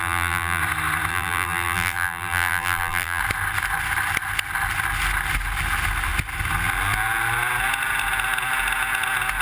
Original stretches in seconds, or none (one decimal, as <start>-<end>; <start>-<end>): 0.6-1.1; 3.2-9.4